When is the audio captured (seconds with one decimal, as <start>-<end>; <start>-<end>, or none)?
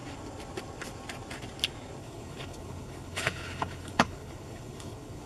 0.0-2.0